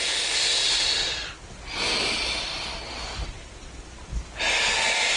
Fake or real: real